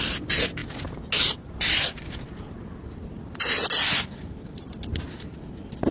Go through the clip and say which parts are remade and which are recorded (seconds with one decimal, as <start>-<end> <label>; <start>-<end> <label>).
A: 0.0-5.9 recorded